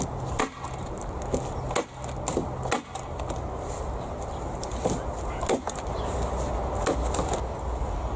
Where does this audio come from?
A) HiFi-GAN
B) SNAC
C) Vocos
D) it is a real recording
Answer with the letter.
D